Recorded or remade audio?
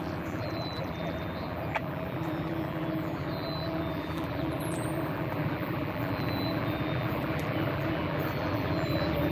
remade